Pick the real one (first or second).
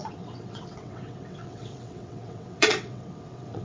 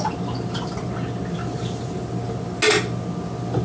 second